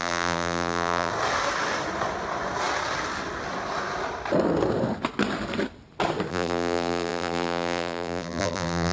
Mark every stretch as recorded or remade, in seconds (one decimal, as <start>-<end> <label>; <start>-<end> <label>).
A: 0.0-1.1 remade; 1.1-6.3 recorded; 6.3-8.9 remade